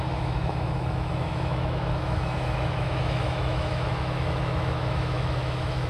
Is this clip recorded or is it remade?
remade